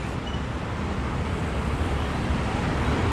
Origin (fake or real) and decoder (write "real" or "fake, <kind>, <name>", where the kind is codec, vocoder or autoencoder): real